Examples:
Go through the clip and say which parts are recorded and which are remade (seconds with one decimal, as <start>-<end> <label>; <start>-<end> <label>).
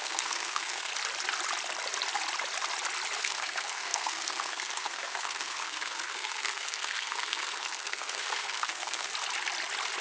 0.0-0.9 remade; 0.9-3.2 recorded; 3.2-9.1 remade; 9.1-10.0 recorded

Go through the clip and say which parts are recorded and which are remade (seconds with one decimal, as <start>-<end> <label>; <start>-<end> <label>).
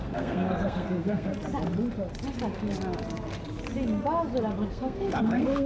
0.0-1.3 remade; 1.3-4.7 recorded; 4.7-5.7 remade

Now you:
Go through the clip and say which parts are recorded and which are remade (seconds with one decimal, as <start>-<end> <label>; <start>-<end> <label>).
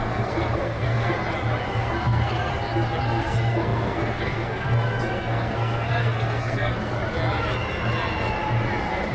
0.0-1.1 remade; 1.1-1.7 recorded; 1.7-2.5 remade; 2.5-3.0 recorded; 3.0-7.0 remade; 7.0-9.1 recorded